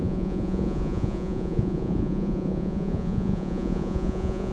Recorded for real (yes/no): no